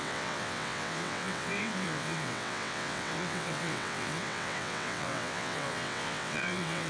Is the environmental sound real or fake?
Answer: fake